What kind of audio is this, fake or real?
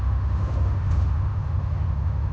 fake